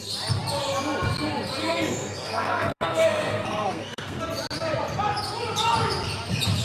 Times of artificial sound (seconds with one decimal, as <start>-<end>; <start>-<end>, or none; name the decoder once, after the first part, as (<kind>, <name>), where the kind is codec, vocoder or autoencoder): 1.6-4.2 (codec, SNAC)